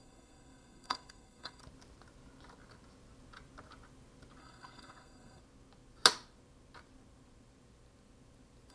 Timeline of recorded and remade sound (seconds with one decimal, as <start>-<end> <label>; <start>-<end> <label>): 0.0-1.6 remade; 1.6-4.4 recorded; 4.4-5.4 remade; 5.4-8.7 recorded